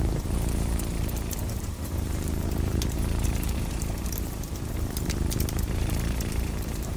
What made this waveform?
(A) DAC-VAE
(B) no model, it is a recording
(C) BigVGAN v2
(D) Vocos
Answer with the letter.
C